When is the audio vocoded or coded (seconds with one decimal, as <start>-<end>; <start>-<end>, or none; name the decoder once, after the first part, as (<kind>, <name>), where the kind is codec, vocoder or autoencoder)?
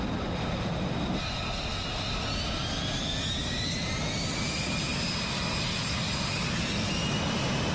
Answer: none